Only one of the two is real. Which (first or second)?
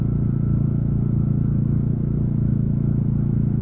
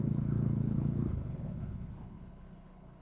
first